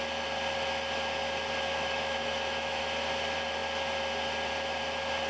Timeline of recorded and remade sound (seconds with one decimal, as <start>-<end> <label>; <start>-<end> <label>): 0.0-1.7 recorded; 1.7-2.8 remade; 2.8-5.3 recorded